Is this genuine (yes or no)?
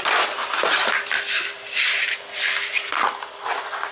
yes